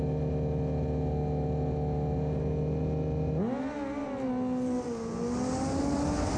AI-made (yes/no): no